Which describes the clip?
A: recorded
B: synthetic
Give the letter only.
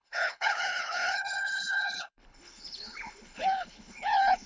B